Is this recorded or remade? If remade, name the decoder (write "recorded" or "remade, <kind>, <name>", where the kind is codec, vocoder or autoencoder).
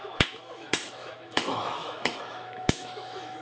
remade, autoencoder, DAC-VAE